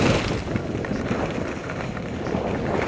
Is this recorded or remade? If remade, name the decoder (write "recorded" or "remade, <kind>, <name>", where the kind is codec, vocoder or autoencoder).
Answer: remade, vocoder, BigVGAN v2